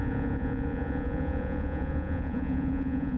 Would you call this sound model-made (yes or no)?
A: yes